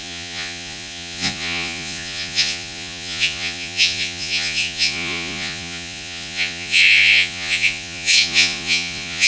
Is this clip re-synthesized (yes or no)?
yes